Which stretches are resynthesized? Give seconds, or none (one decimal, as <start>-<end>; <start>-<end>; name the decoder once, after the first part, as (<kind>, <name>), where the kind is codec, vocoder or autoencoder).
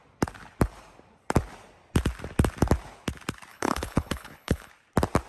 3.5-4.7 (codec, HILCodec)